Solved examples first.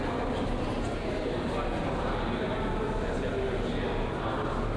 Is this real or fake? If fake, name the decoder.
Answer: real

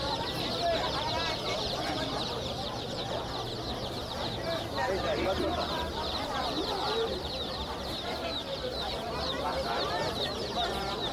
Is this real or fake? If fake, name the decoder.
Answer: fake, vocoder, BigVGAN v2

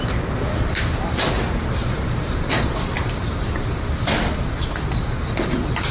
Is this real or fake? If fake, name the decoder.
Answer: fake, vocoder, BigVGAN v2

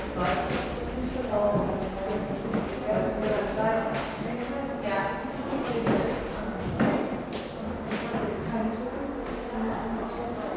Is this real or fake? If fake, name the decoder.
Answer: real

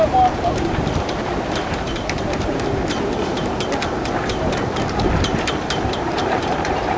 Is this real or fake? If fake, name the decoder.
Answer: fake, vocoder, BigVGAN v2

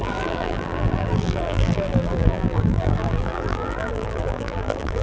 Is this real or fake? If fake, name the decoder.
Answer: fake, vocoder, BigVGAN v2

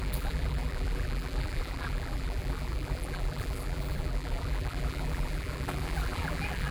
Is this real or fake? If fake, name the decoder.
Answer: fake, vocoder, BigVGAN v2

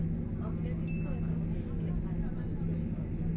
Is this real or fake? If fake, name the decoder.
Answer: real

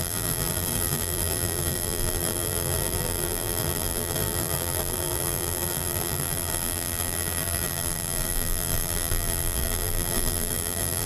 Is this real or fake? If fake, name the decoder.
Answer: fake, vocoder, BigVGAN v2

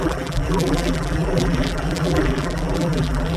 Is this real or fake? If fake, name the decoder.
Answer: fake, vocoder, BigVGAN v2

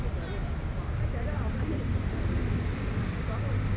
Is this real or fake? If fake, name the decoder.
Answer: fake, vocoder, BigVGAN v2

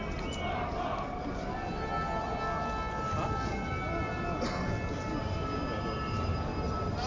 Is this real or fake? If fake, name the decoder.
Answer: real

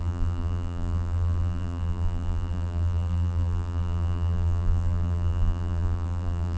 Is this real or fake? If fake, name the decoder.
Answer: fake, vocoder, BigVGAN v2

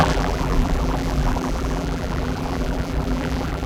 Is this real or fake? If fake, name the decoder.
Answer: fake, vocoder, BigVGAN v2